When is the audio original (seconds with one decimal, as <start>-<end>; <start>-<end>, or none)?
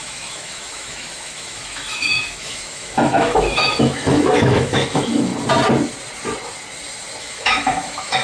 5.3-7.2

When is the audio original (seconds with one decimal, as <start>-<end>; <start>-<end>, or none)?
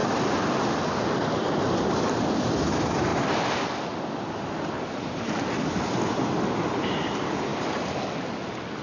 0.0-8.8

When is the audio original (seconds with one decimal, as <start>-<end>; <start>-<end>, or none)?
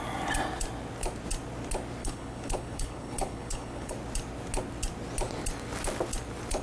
0.0-2.0; 3.9-6.6